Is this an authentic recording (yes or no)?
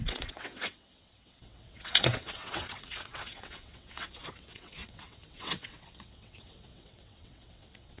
no